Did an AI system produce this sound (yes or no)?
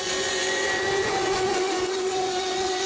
yes